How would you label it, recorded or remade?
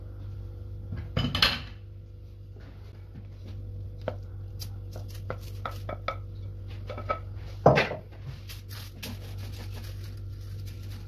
recorded